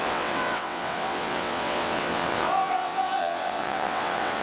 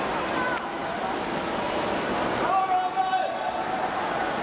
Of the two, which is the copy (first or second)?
first